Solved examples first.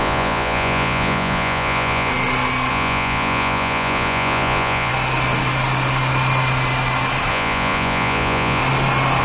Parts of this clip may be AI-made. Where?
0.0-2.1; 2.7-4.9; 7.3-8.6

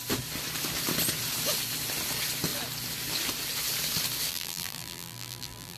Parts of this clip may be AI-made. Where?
4.3-5.8

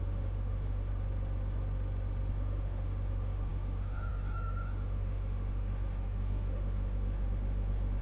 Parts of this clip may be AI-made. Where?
0.0-0.9; 2.3-8.0

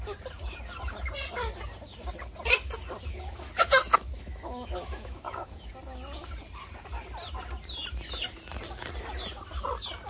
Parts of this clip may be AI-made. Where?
3.1-5.7

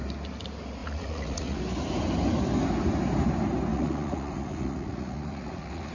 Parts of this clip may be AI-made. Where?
0.8-1.6; 3.7-5.9

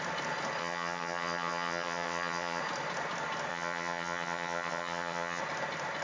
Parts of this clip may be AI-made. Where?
0.6-2.6; 3.5-5.4

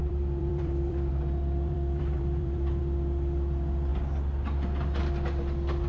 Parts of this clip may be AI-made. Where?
0.0-2.8